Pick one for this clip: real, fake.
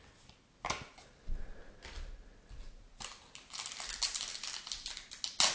real